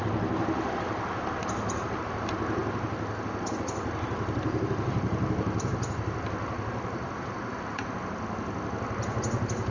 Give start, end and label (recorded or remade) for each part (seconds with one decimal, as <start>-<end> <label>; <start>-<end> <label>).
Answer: 0.0-9.7 recorded